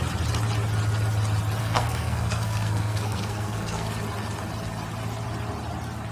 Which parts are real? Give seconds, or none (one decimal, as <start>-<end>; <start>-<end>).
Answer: 0.0-1.6; 3.9-6.1